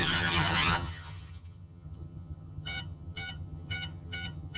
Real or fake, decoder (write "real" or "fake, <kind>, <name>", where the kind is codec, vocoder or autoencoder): fake, vocoder, HiFi-GAN